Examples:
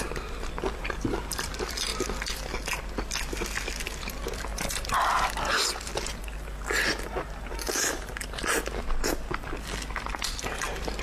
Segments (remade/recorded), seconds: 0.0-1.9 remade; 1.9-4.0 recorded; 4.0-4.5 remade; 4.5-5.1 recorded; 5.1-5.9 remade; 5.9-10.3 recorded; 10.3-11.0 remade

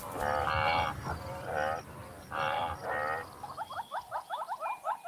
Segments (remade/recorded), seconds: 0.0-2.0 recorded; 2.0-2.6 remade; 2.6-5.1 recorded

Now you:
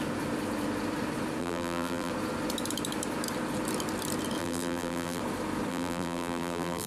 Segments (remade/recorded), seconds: 0.0-1.4 recorded; 1.4-2.1 remade; 2.1-4.4 recorded; 4.4-5.2 remade; 5.2-5.7 recorded; 5.7-6.9 remade

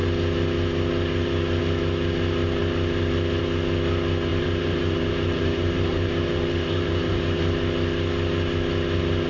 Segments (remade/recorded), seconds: 0.0-4.3 recorded; 4.3-7.4 remade; 7.4-9.3 recorded